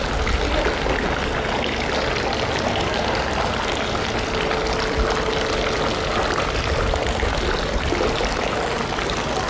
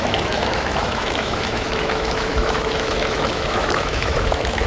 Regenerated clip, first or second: second